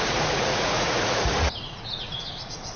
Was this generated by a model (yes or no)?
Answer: yes